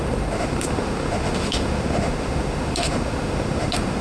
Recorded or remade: remade